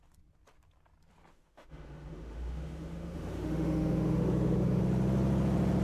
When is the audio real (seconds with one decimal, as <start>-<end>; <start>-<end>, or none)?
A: 0.0-1.3; 4.8-5.8